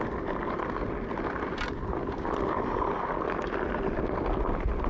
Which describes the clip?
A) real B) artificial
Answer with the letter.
A